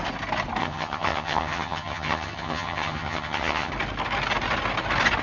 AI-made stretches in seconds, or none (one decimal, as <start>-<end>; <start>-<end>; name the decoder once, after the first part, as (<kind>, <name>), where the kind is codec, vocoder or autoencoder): 0.6-3.7 (vocoder, HiFi-GAN)